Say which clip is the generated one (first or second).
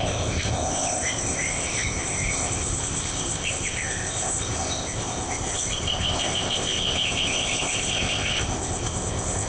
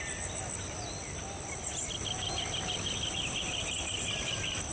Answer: first